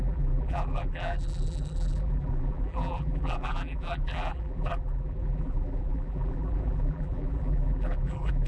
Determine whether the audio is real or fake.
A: fake